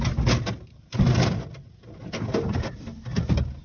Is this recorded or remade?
recorded